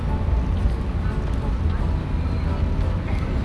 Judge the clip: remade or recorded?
recorded